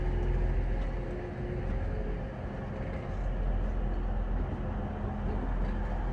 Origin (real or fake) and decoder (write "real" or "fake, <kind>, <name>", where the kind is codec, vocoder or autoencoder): real